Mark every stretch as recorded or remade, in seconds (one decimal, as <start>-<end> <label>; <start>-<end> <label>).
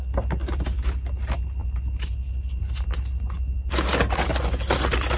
0.0-5.2 recorded